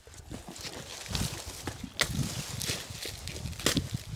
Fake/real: real